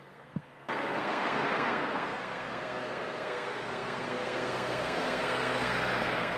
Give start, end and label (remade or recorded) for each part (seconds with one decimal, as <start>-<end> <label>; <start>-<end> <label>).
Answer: 0.0-6.4 remade